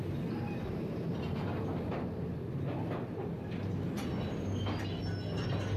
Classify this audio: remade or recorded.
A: recorded